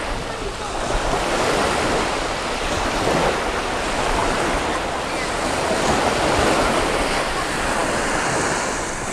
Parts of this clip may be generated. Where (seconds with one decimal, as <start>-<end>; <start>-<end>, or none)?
none